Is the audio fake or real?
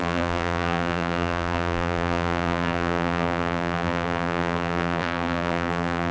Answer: fake